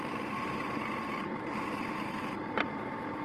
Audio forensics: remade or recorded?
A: remade